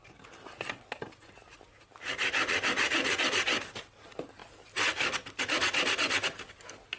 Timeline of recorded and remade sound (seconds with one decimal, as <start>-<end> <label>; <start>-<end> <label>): 0.0-7.0 recorded